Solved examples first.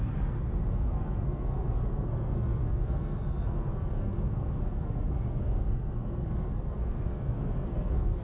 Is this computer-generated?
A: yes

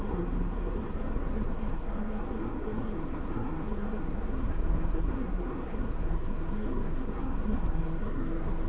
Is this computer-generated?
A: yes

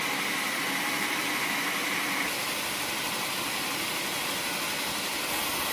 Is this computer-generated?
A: no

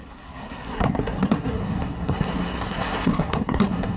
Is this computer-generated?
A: yes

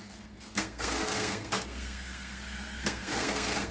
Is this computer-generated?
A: yes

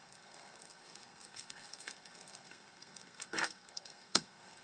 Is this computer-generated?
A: yes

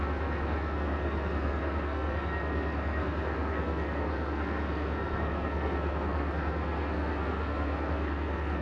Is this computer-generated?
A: yes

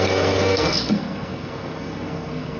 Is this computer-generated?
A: yes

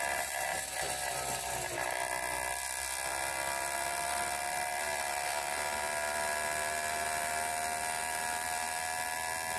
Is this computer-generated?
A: no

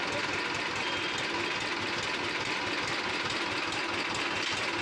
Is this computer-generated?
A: no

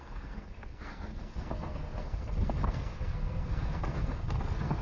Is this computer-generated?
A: yes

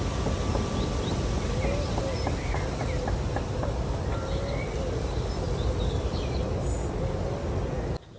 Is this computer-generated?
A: no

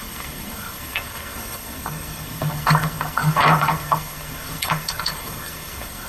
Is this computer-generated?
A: yes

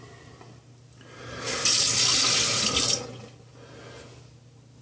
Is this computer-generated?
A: no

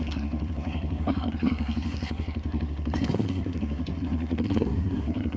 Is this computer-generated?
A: yes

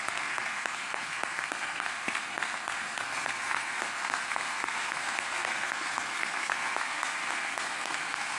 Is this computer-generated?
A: yes